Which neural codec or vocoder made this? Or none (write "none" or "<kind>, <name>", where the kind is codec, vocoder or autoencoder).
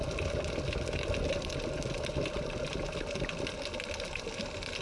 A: none